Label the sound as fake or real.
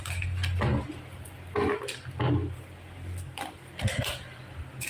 real